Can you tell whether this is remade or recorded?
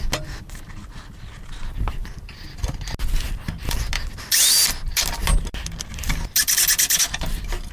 recorded